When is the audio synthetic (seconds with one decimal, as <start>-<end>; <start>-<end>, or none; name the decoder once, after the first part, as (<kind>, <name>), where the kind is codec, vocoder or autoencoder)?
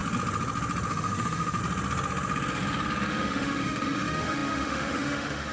0.9-1.6 (autoencoder, DAC-VAE); 3.1-5.5